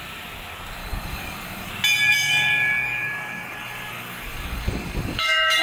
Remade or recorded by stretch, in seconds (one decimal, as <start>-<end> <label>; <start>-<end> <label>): 0.0-0.8 recorded; 0.8-1.7 remade; 1.7-2.1 recorded; 2.1-5.6 remade